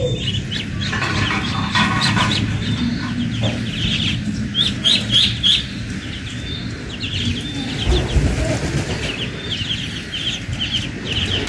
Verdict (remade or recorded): recorded